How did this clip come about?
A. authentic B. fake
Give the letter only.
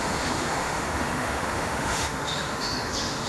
B